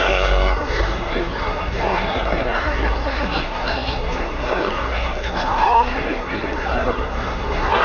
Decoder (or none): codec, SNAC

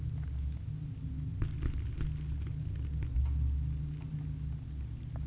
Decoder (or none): none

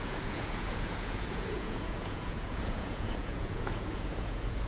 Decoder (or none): vocoder, Vocos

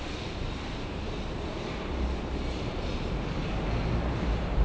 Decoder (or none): vocoder, BigVGAN v2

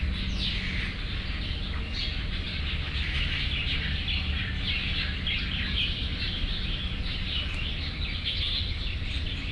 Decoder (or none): none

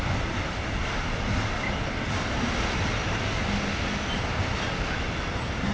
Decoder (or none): none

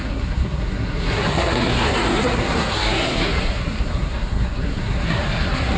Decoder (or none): codec, SNAC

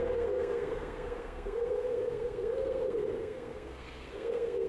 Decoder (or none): codec, SNAC